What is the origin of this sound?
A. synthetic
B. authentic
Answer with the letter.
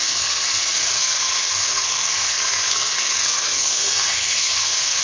A